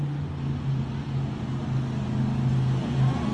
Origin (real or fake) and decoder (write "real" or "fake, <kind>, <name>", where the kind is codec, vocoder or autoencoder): real